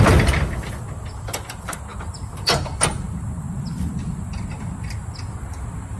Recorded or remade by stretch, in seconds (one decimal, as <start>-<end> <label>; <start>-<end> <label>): 0.0-6.0 remade